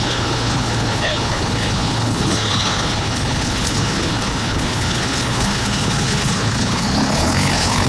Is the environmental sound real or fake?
fake